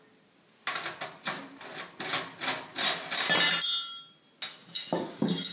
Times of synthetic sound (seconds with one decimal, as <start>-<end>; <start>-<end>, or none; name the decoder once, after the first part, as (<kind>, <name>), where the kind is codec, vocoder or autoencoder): none